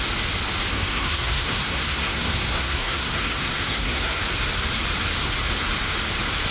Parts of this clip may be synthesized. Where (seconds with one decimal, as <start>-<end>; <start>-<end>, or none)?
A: 0.7-4.2